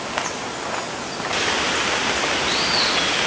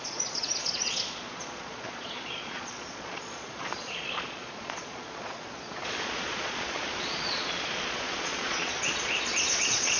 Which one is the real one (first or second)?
first